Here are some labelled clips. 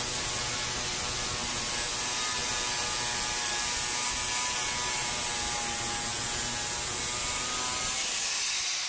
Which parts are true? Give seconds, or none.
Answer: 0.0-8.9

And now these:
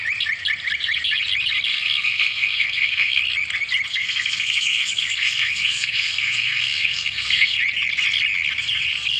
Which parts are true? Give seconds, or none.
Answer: 0.0-1.7; 3.2-3.9; 7.6-9.2

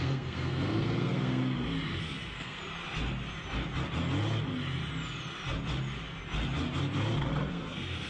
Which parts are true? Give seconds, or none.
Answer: 1.4-2.0; 2.6-7.5

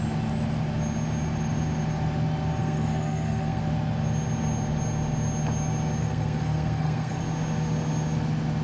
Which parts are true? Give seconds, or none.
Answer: 0.0-2.6; 3.6-6.0; 7.2-8.6